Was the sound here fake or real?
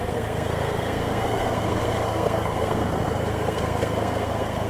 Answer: fake